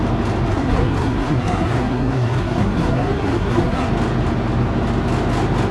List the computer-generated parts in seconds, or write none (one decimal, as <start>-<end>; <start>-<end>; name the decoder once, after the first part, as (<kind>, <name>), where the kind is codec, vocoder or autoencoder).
0.5-3.9 (codec, SNAC)